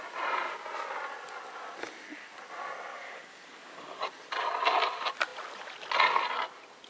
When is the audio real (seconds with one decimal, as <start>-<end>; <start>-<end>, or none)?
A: 0.0-2.9; 4.1-6.9